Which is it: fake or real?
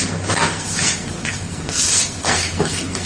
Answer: fake